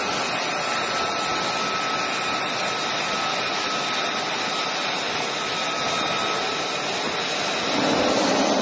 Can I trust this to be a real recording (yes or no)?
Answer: yes